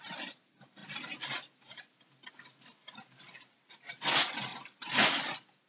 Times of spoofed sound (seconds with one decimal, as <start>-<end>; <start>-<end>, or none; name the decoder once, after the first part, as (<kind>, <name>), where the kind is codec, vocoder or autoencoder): none